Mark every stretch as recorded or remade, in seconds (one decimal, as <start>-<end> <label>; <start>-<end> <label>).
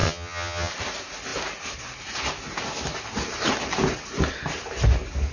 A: 0.0-0.7 remade; 0.7-5.3 recorded